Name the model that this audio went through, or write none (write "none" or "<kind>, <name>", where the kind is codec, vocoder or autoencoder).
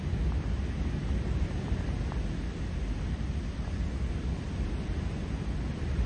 none